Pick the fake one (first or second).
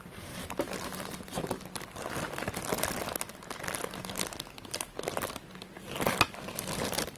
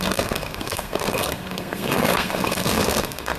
second